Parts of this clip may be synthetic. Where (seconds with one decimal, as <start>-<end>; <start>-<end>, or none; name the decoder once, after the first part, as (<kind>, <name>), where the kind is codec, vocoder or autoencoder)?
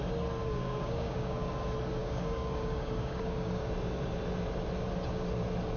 0.4-1.5 (codec, DAC); 2.0-3.7